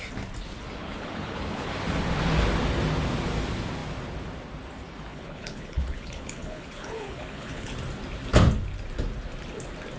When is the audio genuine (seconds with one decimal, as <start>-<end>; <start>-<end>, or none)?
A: 0.0-0.8; 1.7-5.1; 7.7-10.0